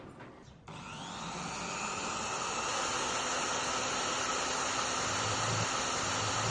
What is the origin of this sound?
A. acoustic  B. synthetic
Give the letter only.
A